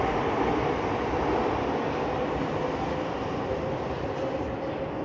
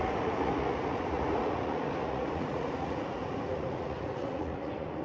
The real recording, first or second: first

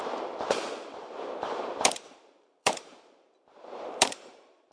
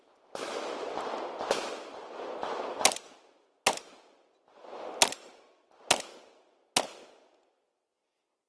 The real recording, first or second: second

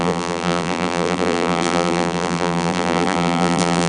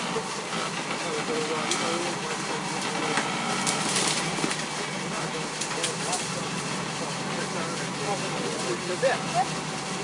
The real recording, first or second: second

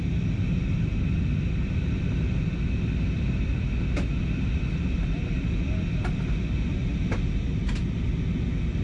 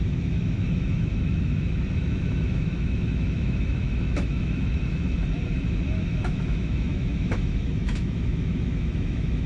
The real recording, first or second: first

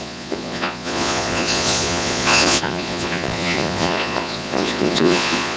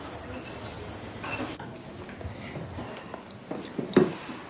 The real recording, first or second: second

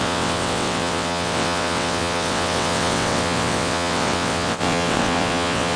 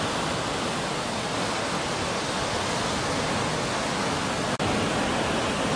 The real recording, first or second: second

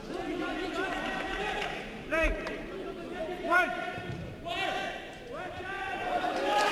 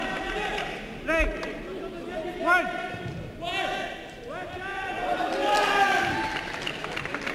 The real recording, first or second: second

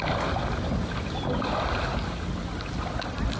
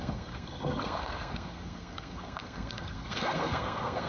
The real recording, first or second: first